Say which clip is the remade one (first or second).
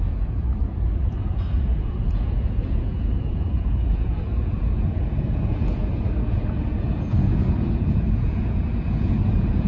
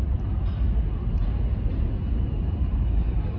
first